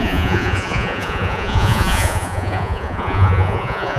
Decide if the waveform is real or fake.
fake